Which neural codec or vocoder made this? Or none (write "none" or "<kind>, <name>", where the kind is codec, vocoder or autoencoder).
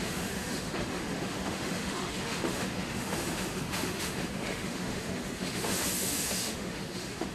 autoencoder, DAC-VAE